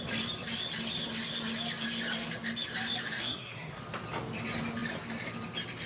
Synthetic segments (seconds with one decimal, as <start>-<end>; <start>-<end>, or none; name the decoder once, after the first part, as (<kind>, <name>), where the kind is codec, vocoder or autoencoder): 3.2-3.8 (codec, SNAC)